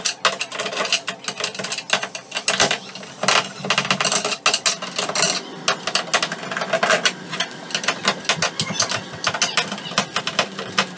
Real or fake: real